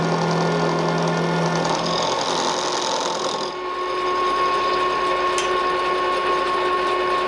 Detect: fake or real real